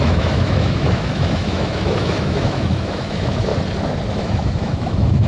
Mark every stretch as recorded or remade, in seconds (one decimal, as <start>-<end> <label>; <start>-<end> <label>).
0.0-3.5 remade; 3.5-4.2 recorded; 4.2-5.3 remade